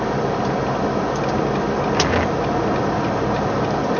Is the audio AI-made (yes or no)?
no